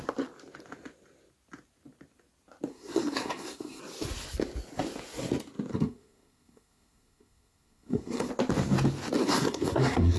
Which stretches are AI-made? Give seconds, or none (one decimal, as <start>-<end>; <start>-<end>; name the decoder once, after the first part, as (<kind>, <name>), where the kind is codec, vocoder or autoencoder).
2.7-3.8 (codec, SNAC); 5.7-8.3; 9.2-10.2

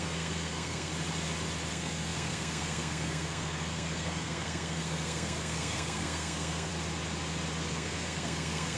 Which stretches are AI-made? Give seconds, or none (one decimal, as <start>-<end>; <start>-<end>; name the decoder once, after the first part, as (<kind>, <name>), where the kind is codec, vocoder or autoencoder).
0.0-0.9 (codec, SNAC); 1.7-6.7; 7.7-8.8

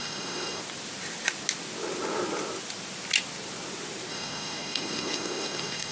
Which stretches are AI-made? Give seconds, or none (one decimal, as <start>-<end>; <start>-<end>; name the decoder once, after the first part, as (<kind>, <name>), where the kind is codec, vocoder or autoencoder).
0.0-0.6 (codec, SNAC); 4.1-5.9